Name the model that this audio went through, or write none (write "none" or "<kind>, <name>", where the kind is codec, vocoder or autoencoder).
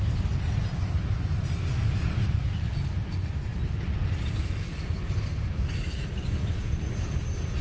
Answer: none